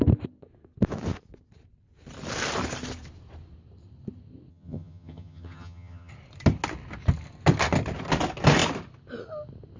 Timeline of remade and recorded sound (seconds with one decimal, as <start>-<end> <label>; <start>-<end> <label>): 0.0-4.5 recorded; 4.5-6.1 remade; 6.1-9.8 recorded